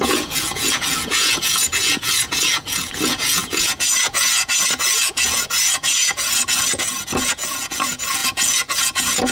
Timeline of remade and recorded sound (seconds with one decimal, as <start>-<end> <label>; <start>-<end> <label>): 0.0-9.3 remade